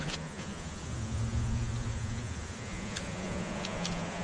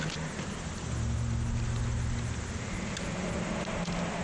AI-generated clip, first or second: first